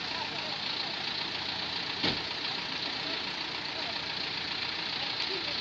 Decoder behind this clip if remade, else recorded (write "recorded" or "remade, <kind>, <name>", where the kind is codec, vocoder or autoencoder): recorded